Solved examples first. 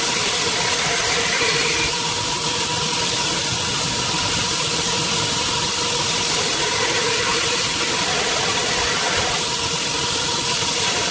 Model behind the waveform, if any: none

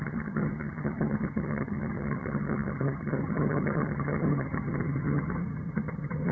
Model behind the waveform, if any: vocoder, HiFi-GAN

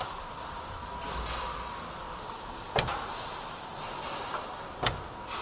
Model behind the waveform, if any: none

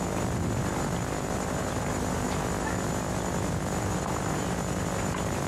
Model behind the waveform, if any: vocoder, BigVGAN v2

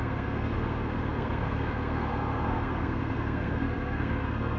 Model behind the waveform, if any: codec, SNAC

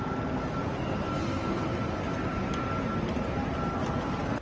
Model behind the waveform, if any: none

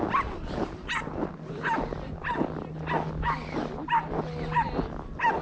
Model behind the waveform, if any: none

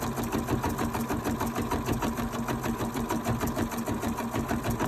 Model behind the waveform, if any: none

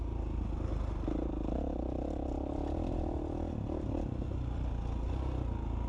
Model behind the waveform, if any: none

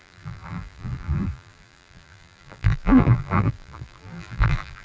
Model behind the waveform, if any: vocoder, BigVGAN v2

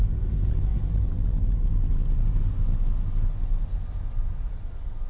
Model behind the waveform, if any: none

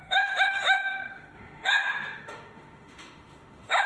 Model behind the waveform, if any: autoencoder, DAC-VAE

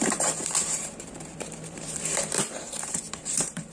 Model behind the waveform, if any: vocoder, BigVGAN v2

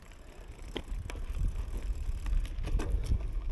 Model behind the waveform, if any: none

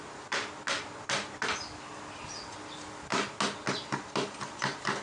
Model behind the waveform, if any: none